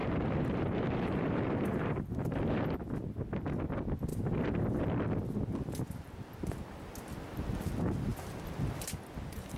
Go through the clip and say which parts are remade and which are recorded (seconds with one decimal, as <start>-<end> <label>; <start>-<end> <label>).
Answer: 0.0-2.3 remade; 2.3-4.1 recorded; 4.1-4.8 remade; 4.8-9.6 recorded